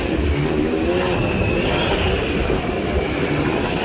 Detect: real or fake real